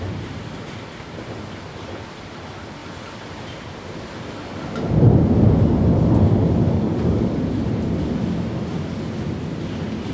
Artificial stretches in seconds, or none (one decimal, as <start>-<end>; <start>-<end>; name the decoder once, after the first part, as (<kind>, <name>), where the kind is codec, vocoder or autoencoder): 6.6-7.3 (codec, DAC)

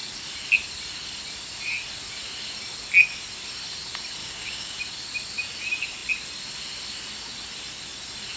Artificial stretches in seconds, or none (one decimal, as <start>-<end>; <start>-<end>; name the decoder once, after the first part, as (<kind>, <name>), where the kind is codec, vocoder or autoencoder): 4.2-4.8 (codec, DAC)

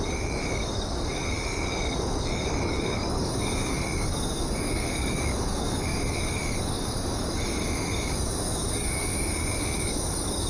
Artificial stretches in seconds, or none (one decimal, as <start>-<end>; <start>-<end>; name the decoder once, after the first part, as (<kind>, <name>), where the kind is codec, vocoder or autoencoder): 0.0-10.5 (codec, DAC)

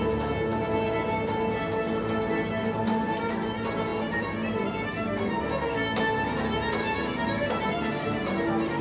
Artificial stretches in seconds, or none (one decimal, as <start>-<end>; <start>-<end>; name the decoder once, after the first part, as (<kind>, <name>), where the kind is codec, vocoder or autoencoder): none

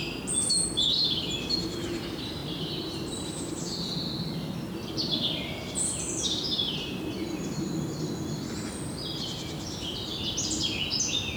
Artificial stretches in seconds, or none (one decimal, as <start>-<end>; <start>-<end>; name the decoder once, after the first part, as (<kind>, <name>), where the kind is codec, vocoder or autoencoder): none

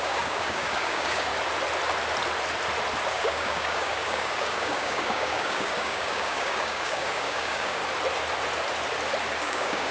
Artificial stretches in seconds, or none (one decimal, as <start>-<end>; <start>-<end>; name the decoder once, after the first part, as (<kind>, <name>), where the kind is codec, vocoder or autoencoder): 0.0-1.3 (codec, DAC); 3.1-7.8; 9.4-9.9